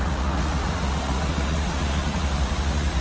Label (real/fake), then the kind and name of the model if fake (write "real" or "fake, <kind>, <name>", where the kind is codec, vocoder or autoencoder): fake, vocoder, Vocos